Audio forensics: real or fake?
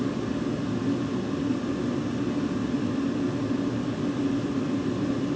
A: real